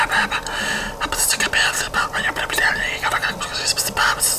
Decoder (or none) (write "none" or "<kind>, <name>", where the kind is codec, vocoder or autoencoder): none